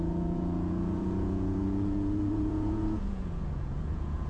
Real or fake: fake